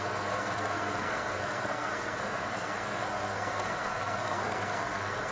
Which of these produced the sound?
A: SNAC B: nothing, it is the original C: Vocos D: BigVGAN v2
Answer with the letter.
A